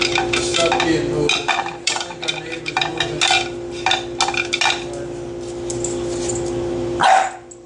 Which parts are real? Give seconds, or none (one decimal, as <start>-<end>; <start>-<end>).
0.5-1.8; 2.9-6.3